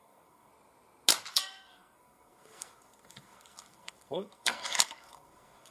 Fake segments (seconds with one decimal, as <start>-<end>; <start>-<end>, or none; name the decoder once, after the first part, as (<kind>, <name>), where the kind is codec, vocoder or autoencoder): 0.0-0.5 (codec, SNAC); 1.3-5.7